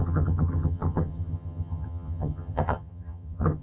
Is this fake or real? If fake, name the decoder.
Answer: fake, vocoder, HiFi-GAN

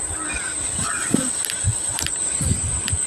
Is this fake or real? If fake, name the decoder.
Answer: real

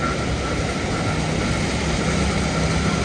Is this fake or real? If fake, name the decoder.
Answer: real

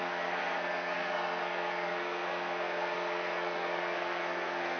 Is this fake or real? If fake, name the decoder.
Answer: fake, codec, SNAC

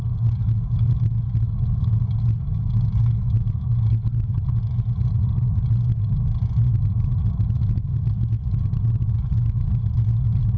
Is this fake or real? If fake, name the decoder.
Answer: real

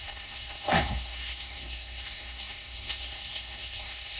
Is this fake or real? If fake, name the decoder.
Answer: fake, codec, SNAC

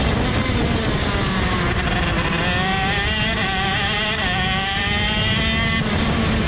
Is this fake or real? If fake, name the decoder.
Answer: real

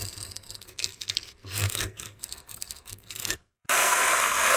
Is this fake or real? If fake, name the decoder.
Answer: fake, codec, SNAC